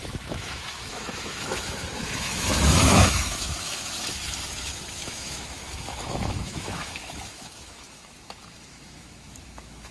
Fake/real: fake